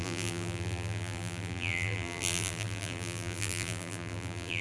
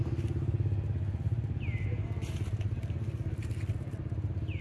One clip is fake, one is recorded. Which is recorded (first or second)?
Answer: second